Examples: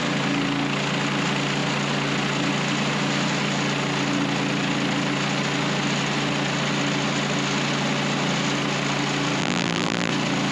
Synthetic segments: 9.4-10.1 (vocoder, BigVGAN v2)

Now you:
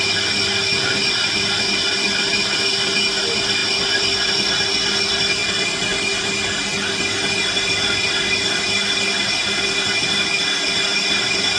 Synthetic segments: none

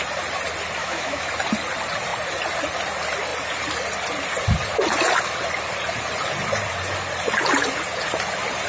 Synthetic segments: 0.8-1.3 (autoencoder, DAC-VAE)